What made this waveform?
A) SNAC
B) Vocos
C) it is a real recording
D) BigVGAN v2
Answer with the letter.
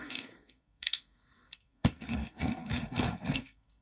A